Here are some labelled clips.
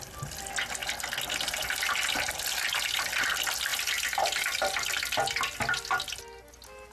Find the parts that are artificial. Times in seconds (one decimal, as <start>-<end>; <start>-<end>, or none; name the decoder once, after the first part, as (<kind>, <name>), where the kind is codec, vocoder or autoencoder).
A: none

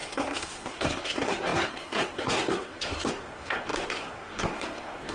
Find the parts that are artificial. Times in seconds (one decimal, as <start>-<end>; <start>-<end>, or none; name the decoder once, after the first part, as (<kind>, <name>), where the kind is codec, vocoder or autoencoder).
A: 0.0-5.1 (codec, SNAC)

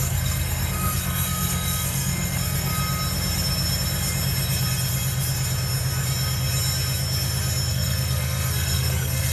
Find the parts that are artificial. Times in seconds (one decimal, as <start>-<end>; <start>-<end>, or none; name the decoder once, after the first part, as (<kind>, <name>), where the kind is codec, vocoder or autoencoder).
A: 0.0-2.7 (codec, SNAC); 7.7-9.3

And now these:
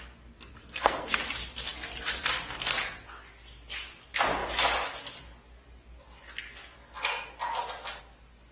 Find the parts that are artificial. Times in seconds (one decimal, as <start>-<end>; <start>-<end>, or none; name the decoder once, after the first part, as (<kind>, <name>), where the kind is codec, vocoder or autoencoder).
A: 0.5-1.2 (codec, SNAC)

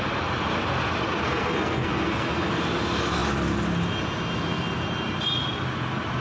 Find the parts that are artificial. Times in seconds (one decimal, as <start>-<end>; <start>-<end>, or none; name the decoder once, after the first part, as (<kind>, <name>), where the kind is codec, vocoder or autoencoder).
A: 1.2-2.5 (codec, SNAC)

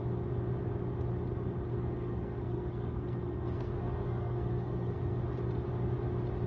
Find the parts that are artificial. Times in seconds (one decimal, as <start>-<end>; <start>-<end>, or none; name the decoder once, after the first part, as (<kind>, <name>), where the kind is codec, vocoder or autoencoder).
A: 1.7-5.2 (codec, SNAC)